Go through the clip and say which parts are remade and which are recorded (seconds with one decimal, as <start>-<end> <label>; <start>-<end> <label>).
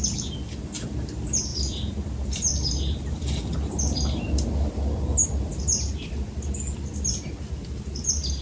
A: 0.0-1.5 recorded; 1.5-3.8 remade; 3.8-8.4 recorded